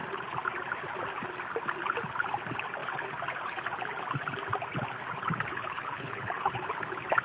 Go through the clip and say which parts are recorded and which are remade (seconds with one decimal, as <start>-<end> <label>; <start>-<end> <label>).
0.0-5.5 recorded; 5.5-6.5 remade; 6.5-7.2 recorded